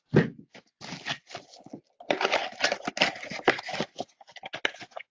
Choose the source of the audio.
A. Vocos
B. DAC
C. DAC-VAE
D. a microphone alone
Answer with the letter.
D